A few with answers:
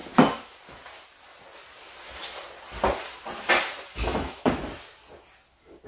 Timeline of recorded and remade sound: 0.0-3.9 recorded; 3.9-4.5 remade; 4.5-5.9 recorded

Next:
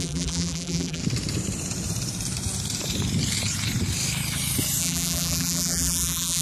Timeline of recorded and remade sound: 0.0-1.0 remade; 1.0-4.8 recorded; 4.8-6.4 remade